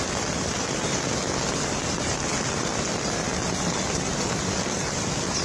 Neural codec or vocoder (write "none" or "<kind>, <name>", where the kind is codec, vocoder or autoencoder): none